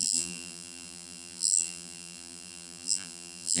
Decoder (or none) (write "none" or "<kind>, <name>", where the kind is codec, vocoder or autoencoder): vocoder, BigVGAN v2